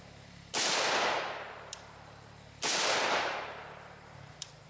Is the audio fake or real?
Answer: fake